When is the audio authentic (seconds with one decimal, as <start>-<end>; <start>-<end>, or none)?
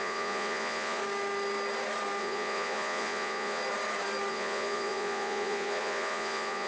1.0-2.2; 3.6-4.3